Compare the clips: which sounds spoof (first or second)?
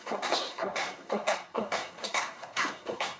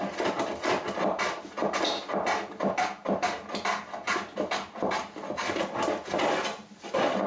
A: first